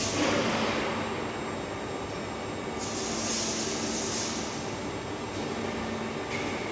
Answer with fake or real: real